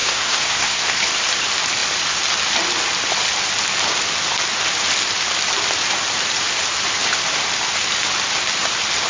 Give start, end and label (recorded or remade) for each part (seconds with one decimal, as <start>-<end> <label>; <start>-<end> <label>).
0.0-1.0 remade; 1.0-9.1 recorded